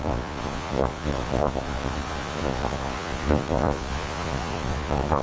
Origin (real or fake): fake